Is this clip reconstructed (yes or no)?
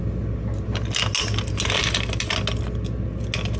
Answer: no